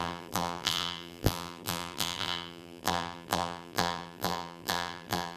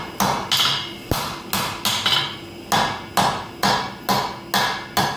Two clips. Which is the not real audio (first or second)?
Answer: first